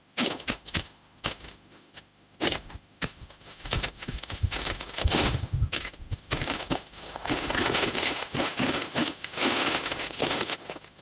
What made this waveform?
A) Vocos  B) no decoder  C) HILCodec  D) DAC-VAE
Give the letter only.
D